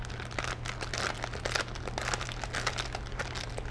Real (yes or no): yes